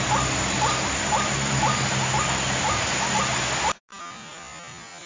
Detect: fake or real real